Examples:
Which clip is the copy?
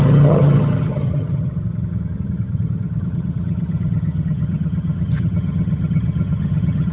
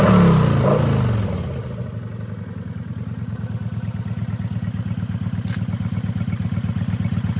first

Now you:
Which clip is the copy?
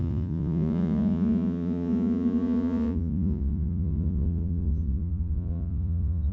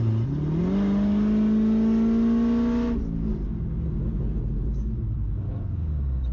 first